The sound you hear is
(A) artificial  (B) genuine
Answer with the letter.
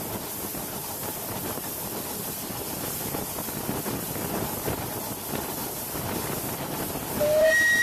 A